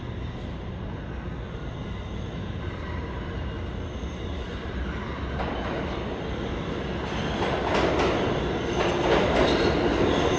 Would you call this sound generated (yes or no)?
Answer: no